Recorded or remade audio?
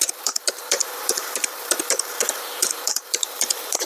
remade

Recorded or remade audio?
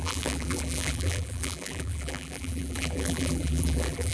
remade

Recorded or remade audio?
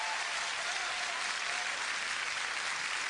recorded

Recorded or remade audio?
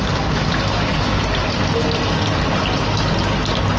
recorded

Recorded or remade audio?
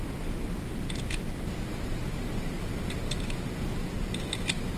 recorded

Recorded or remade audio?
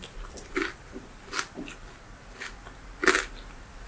remade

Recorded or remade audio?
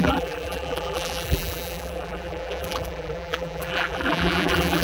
remade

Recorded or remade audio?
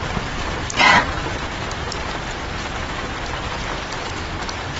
remade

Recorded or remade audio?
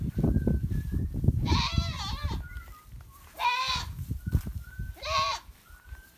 recorded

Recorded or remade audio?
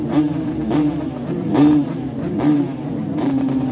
remade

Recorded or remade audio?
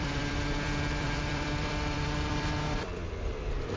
remade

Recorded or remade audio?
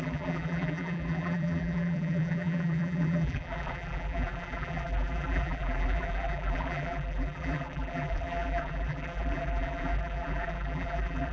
remade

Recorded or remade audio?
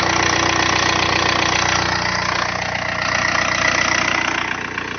recorded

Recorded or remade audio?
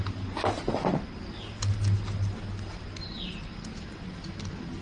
recorded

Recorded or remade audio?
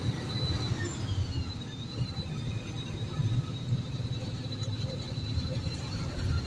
remade